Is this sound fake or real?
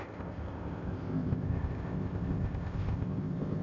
fake